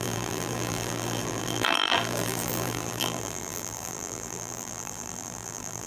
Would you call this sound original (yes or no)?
no